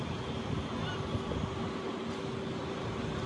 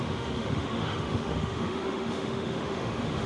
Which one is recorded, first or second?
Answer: first